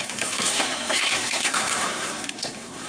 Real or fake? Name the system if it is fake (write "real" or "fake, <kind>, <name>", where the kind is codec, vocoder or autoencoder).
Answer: fake, codec, SNAC